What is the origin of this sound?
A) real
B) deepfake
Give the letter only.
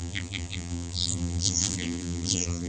B